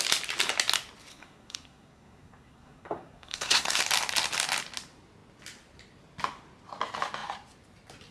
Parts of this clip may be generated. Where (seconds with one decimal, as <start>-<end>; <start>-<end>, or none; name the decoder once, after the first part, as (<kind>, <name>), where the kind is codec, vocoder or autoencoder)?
1.1-3.8 (codec, SNAC)